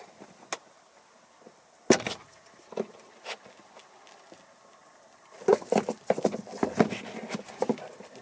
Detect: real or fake real